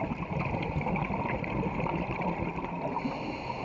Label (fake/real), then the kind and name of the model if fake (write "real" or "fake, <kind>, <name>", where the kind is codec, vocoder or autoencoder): real